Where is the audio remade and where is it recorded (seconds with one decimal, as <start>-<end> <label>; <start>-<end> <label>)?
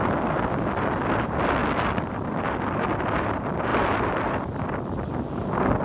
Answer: 0.0-5.8 recorded